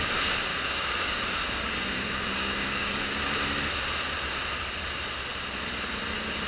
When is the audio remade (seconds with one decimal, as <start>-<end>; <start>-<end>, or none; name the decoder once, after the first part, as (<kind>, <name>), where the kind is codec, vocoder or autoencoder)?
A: 0.5-3.0 (codec, DAC)